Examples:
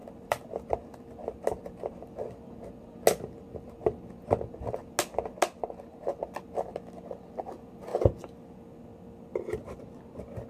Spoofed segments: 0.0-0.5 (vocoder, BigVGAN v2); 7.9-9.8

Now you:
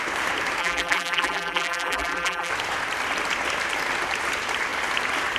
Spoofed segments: 0.6-2.5 (vocoder, BigVGAN v2)

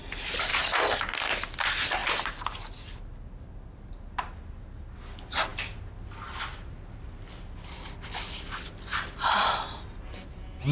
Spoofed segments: 8.9-9.5 (vocoder, BigVGAN v2)

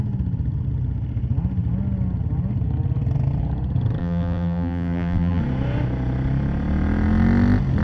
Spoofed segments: 4.0-5.4 (vocoder, BigVGAN v2)